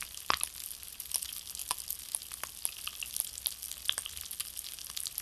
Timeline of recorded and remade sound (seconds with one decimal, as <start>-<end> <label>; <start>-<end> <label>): 0.0-5.2 recorded